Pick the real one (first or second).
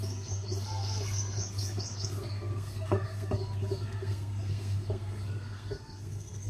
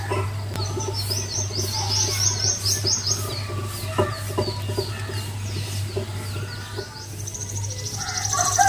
second